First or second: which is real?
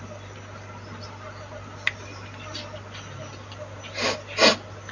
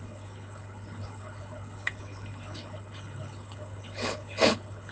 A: first